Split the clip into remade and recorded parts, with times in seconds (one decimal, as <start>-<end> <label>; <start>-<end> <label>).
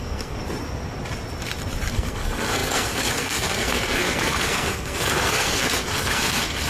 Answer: 0.0-0.4 remade; 0.4-1.9 recorded; 1.9-6.7 remade